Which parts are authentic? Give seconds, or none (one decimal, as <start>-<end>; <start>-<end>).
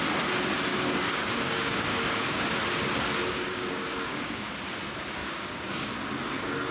0.0-0.7; 2.6-3.2; 4.5-5.2; 5.9-6.7